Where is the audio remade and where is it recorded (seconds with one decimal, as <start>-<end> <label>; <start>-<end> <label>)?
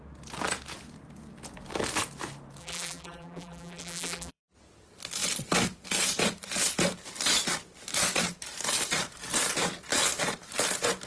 0.0-2.6 recorded; 2.6-4.4 remade; 4.4-11.1 recorded